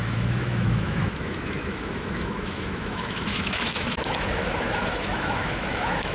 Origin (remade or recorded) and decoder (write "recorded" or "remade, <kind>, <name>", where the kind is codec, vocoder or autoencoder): remade, autoencoder, DAC-VAE